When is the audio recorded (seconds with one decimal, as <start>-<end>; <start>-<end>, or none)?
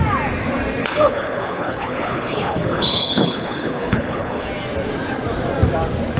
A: 0.0-0.8; 4.5-6.2